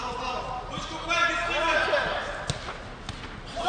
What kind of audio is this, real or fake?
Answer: real